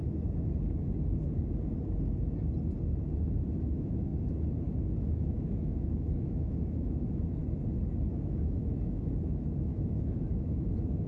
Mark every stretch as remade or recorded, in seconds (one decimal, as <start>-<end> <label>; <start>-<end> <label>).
0.0-3.5 recorded; 3.5-4.1 remade; 4.1-5.0 recorded; 5.0-7.4 remade; 7.4-8.1 recorded; 8.1-11.1 remade